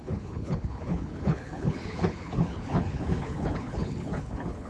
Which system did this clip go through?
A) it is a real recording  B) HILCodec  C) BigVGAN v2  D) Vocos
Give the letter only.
B